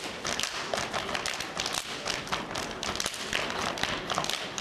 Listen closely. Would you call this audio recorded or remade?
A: recorded